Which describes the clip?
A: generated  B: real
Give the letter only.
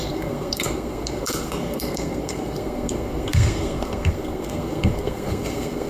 A